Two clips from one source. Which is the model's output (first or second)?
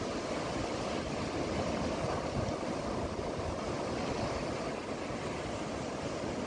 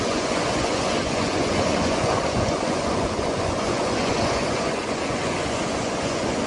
second